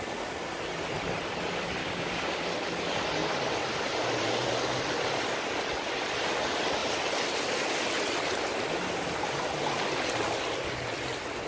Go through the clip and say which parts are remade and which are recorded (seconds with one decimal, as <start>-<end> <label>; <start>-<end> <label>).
0.0-1.8 recorded; 1.8-2.4 remade; 2.4-11.5 recorded